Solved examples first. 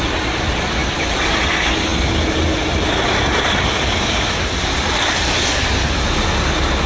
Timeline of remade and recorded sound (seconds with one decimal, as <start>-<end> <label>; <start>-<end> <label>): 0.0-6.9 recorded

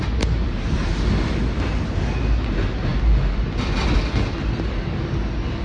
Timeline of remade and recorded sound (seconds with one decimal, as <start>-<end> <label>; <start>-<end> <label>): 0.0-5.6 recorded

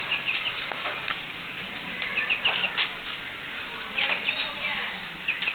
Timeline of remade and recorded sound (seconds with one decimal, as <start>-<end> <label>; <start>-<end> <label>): 0.0-2.1 remade; 2.1-4.5 recorded; 4.5-5.5 remade